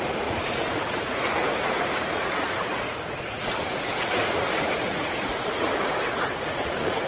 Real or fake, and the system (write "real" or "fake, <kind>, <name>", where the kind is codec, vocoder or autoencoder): fake, vocoder, Vocos